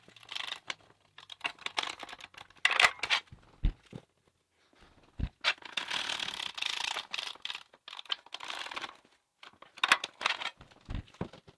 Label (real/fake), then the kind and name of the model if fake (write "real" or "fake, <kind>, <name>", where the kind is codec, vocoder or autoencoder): real